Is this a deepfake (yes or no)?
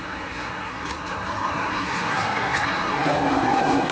yes